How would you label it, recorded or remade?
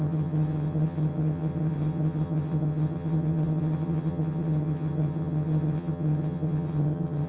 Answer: remade